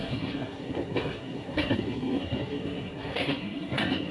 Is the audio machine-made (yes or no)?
yes